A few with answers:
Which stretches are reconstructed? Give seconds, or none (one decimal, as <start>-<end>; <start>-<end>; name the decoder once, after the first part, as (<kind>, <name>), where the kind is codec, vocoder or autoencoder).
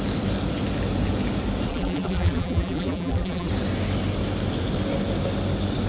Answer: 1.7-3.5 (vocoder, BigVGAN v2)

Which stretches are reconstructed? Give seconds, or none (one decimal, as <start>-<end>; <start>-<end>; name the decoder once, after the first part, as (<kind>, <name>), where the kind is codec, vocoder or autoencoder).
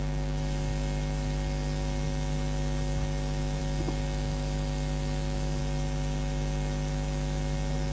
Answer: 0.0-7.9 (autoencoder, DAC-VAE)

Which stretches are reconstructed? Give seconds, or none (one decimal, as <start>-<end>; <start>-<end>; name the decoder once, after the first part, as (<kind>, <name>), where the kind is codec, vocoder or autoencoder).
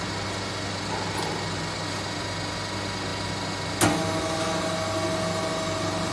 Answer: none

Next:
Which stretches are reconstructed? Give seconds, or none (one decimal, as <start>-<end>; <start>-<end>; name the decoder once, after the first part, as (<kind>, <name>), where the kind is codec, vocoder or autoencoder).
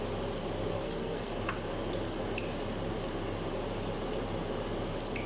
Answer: 0.7-1.3 (codec, SNAC)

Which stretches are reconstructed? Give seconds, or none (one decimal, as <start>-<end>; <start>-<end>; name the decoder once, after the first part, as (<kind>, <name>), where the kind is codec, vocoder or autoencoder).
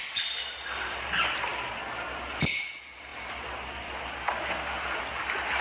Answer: none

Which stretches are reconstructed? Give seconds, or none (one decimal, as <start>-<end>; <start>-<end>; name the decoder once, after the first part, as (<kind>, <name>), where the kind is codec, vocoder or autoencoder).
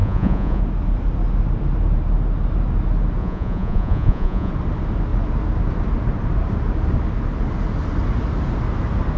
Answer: 0.0-0.6 (vocoder, Vocos); 3.2-4.5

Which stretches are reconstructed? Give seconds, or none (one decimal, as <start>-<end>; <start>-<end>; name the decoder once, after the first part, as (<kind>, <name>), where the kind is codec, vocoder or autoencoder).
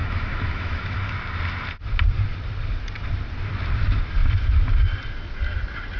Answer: 0.0-1.1 (autoencoder, DAC-VAE)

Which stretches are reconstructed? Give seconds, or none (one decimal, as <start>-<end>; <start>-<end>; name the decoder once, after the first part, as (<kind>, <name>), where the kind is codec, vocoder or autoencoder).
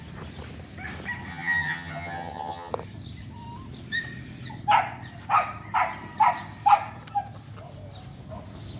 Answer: 1.3-2.7 (vocoder, HiFi-GAN)